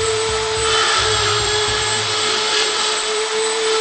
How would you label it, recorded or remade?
remade